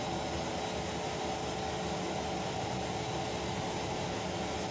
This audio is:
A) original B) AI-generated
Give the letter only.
A